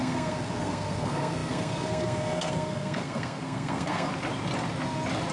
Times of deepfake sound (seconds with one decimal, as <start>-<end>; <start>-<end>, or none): 0.0-4.1

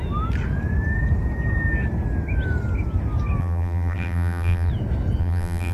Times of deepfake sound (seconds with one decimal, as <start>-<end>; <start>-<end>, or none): 3.4-4.7; 5.2-5.7

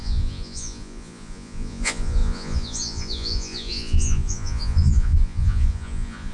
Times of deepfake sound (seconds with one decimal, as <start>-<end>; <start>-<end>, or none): 0.0-6.3

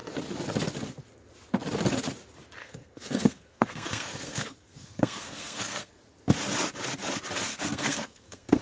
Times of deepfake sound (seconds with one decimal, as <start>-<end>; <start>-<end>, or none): 2.6-5.9; 7.5-8.6

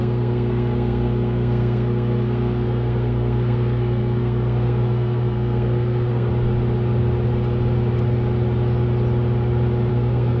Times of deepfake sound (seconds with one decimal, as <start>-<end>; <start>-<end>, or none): 0.0-6.3; 9.9-10.4

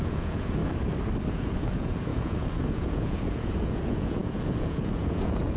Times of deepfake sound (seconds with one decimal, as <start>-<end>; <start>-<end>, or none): 0.0-0.6; 1.3-5.6

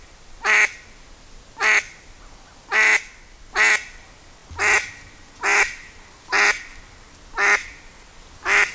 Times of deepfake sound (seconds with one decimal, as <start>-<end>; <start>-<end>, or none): none